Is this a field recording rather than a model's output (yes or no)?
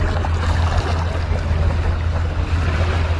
yes